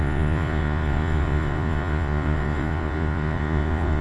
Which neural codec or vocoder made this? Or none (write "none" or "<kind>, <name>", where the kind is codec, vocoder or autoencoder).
vocoder, Vocos